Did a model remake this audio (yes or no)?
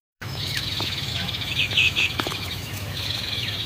yes